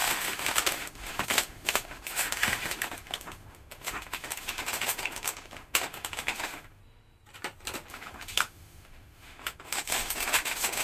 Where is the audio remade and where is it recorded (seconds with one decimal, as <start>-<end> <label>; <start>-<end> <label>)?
0.0-6.8 remade; 6.8-7.9 recorded; 7.9-10.8 remade